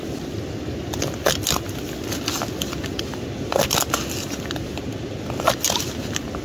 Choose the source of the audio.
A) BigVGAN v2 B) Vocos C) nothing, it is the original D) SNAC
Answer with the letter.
C